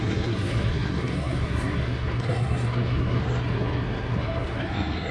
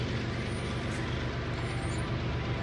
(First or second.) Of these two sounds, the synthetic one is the first